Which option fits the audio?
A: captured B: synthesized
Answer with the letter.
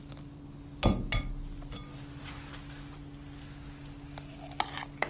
A